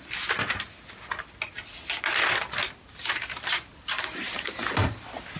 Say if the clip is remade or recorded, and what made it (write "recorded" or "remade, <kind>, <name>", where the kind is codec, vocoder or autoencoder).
recorded